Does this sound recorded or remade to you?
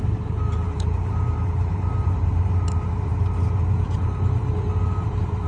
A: remade